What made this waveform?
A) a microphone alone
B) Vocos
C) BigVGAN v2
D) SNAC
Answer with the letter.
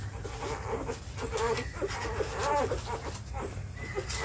A